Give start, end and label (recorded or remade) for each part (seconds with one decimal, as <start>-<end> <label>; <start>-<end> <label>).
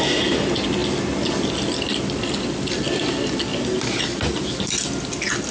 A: 0.0-5.5 recorded